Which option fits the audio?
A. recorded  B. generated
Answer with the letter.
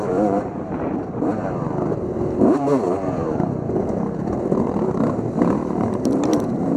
B